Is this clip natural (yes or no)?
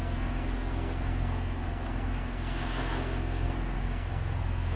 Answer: no